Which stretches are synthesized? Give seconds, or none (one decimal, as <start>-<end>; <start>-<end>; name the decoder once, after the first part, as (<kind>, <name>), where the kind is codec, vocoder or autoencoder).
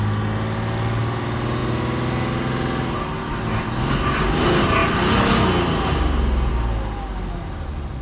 none